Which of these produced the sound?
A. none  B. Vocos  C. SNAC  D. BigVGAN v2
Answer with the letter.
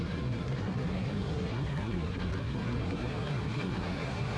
C